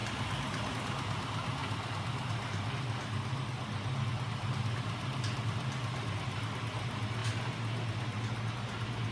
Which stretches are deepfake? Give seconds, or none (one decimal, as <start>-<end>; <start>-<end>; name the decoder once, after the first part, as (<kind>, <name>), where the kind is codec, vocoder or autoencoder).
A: none

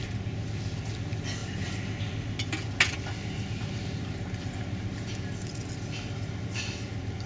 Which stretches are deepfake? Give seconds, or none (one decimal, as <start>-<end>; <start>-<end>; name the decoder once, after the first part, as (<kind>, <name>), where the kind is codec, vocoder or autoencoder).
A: none

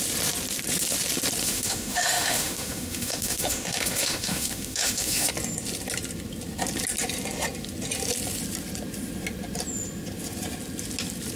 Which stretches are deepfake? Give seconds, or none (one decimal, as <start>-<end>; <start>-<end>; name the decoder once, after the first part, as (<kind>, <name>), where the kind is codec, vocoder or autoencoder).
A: 1.4-5.3 (autoencoder, DAC-VAE)

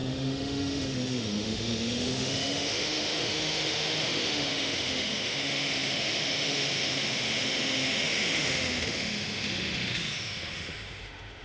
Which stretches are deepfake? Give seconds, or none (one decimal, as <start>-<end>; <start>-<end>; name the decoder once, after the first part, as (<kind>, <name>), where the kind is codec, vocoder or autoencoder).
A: 0.0-11.4 (autoencoder, DAC-VAE)